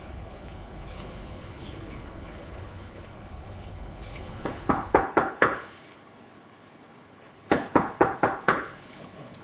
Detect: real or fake fake